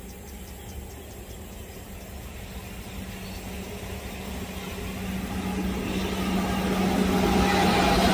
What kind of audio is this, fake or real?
real